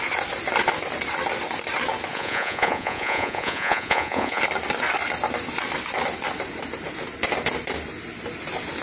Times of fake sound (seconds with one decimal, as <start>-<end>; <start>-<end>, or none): 2.1-4.4